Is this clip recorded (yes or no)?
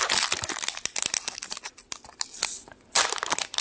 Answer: yes